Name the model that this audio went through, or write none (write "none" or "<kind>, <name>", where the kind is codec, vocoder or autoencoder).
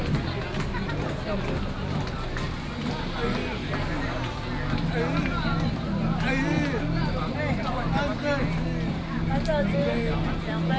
none